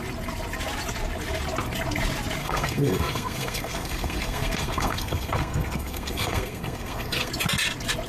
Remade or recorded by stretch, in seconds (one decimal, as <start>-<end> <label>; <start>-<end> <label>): 0.0-2.4 recorded; 2.4-7.3 remade; 7.3-8.1 recorded